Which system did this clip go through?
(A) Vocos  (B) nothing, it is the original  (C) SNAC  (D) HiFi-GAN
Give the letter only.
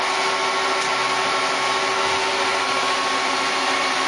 B